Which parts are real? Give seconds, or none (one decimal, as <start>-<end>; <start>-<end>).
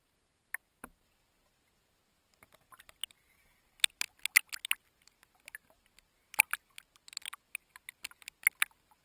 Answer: 0.0-9.0